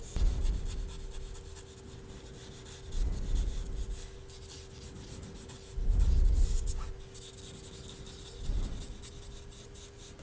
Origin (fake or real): real